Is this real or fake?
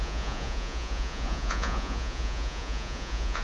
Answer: fake